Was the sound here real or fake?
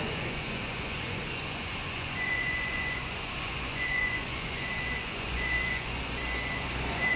fake